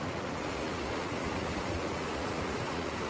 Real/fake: fake